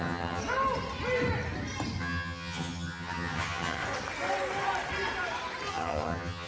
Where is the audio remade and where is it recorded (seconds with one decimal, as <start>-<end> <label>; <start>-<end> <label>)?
0.0-0.4 remade; 0.4-2.0 recorded; 2.0-3.8 remade; 3.8-5.7 recorded; 5.7-6.5 remade